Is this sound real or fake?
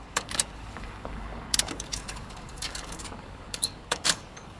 fake